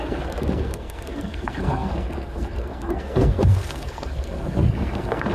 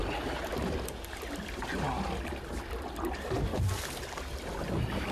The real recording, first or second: second